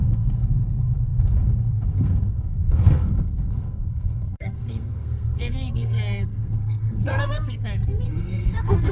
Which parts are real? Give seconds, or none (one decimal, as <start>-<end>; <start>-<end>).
none